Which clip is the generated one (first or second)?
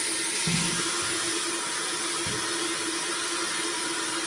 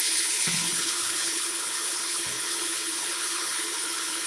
second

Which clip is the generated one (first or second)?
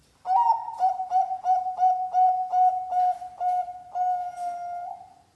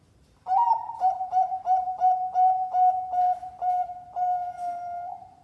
second